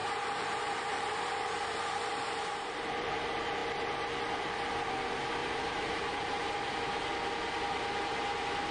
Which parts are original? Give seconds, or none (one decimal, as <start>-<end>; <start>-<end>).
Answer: 3.1-5.4; 6.7-8.7